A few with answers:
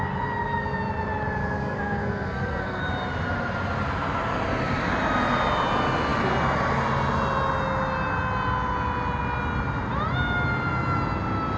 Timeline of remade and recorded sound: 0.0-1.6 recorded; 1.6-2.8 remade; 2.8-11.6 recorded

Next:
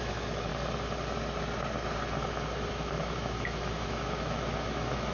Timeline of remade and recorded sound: 0.0-0.5 remade; 0.5-2.7 recorded; 2.7-5.1 remade

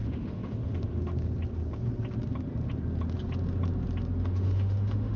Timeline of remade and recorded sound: 0.0-1.1 remade; 1.1-4.2 recorded; 4.2-5.2 remade

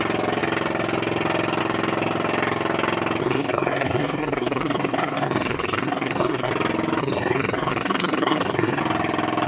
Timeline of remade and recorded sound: 0.0-3.2 recorded; 3.2-6.5 remade; 6.5-7.0 recorded; 7.0-8.8 remade; 8.8-9.5 recorded

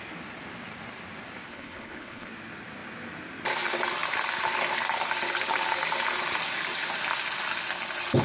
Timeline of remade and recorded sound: 0.0-1.5 recorded; 1.5-2.3 remade; 2.3-8.2 recorded

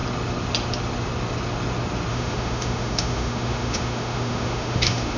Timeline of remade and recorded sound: 0.0-2.1 recorded; 2.1-5.2 remade